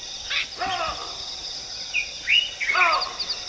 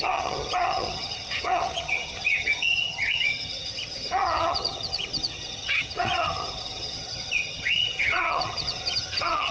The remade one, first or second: second